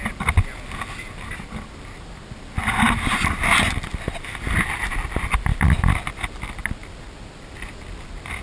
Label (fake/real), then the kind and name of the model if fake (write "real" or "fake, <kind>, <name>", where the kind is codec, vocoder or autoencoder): real